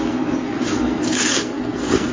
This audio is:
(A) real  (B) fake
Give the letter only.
B